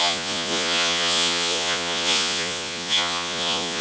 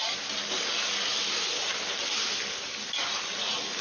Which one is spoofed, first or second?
first